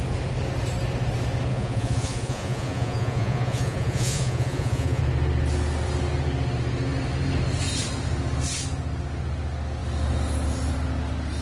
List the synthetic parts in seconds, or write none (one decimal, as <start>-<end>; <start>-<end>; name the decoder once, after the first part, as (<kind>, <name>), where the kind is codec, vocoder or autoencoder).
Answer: 1.5-5.0 (vocoder, Vocos)

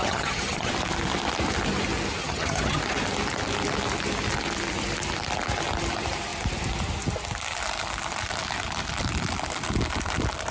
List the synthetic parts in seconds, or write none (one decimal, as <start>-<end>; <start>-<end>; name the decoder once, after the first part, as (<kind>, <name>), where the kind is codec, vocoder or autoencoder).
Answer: 0.0-0.7 (vocoder, HiFi-GAN); 2.2-2.8

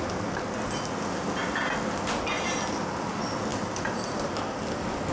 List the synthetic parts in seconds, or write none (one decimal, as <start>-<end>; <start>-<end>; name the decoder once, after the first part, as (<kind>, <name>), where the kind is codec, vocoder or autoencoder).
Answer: 3.5-4.2 (vocoder, BigVGAN v2)

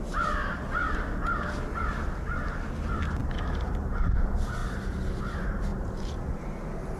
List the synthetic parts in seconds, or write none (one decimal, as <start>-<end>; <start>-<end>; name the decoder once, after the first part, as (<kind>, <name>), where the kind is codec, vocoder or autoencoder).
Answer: 3.2-4.1 (vocoder, BigVGAN v2); 4.6-5.2

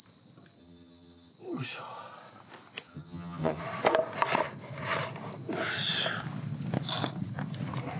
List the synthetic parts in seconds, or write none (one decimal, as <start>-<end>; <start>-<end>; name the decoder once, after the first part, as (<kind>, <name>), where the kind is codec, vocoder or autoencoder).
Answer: 0.6-1.3 (vocoder, HiFi-GAN); 2.9-3.6